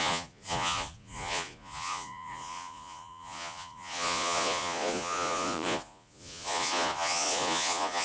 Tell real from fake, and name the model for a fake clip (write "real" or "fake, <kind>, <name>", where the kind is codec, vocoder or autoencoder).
fake, vocoder, Vocos